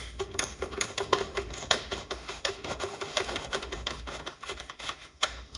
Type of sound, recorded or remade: remade